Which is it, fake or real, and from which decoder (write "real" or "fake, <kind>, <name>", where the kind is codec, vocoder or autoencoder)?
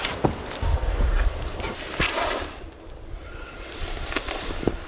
real